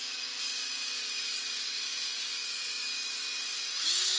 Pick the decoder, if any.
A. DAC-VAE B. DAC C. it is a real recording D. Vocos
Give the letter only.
B